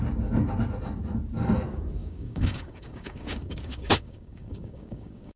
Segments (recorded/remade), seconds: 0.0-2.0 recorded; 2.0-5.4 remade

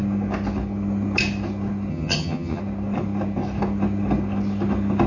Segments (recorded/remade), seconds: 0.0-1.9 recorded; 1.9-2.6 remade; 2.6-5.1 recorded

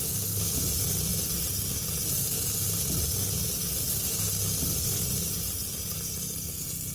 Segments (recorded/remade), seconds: 0.0-6.9 recorded